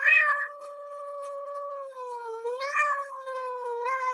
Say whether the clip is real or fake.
fake